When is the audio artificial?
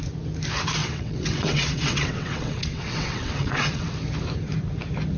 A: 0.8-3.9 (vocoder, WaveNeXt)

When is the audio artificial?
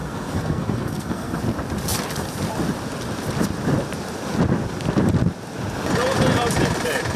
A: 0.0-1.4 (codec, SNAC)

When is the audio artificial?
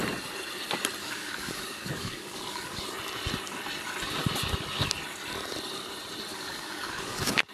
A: 1.0-2.8 (codec, DAC); 6.3-7.5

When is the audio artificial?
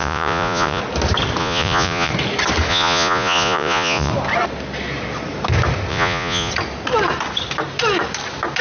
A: 0.0-0.8 (vocoder, Vocos); 1.4-2.1; 2.7-4.1; 5.9-6.5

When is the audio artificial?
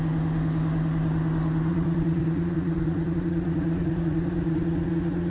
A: 1.7-5.3 (vocoder, Vocos)